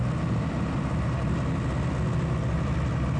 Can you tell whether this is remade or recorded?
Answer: recorded